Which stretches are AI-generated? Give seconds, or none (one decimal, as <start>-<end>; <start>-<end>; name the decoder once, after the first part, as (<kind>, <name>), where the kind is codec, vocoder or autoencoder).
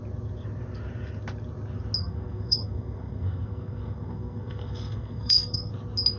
2.0-5.7 (codec, SNAC)